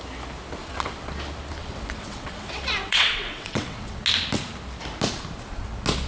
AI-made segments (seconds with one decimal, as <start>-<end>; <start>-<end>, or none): 0.6-1.1; 1.6-4.0